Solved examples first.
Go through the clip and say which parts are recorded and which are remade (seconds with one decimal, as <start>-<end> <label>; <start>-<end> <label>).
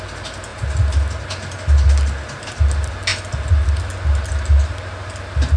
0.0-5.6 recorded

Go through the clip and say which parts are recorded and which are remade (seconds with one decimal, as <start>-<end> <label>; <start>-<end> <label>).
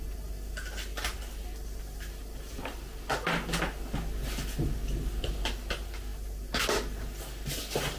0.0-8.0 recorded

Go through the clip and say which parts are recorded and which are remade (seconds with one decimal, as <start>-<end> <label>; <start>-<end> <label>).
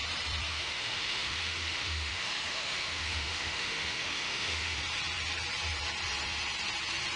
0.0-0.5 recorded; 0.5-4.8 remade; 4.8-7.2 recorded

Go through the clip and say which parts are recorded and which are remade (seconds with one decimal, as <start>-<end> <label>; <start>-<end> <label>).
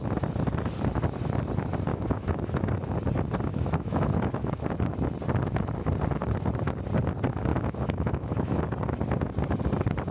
0.0-1.9 recorded; 1.9-2.7 remade; 2.7-3.5 recorded; 3.5-4.6 remade; 4.6-7.5 recorded; 7.5-8.6 remade; 8.6-10.1 recorded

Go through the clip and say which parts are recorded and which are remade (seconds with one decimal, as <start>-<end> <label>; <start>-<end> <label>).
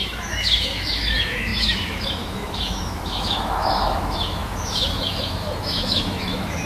0.0-6.7 remade